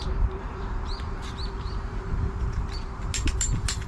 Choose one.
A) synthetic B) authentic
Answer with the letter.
A